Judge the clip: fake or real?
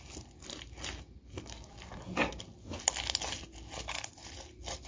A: real